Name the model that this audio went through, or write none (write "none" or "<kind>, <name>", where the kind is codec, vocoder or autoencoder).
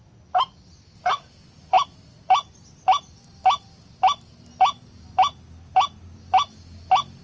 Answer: none